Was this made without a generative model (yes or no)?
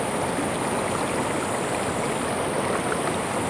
yes